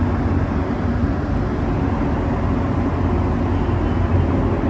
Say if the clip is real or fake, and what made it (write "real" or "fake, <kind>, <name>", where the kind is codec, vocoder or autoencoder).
real